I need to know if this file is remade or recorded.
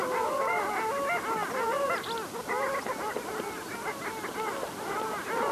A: recorded